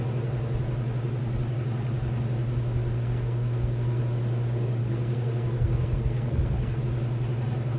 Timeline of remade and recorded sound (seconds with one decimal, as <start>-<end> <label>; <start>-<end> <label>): 0.0-2.9 recorded; 2.9-4.0 remade; 4.0-4.8 recorded; 4.8-6.8 remade; 6.8-7.8 recorded